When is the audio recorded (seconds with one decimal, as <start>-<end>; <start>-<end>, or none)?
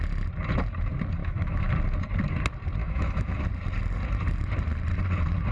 0.0-1.2; 1.7-2.8; 3.4-5.5